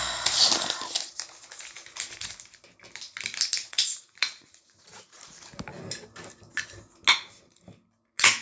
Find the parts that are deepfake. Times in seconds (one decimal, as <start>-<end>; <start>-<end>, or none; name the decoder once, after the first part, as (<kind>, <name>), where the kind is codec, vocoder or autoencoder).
3.6-5.3 (vocoder, Vocos)